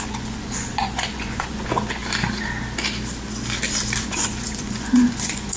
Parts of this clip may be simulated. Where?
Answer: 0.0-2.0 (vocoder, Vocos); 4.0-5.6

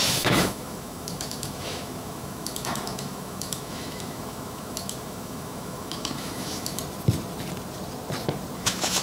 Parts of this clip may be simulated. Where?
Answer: 0.0-6.8 (autoencoder, DAC-VAE); 8.6-9.0

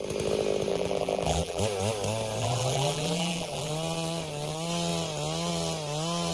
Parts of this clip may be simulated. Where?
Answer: 0.7-1.6 (vocoder, BigVGAN v2); 2.4-3.7